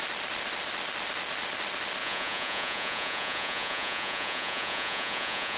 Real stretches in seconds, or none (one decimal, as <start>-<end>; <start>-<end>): 0.0-2.0